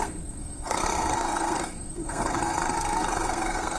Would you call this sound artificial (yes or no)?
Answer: yes